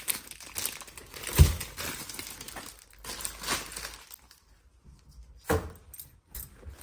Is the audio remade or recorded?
recorded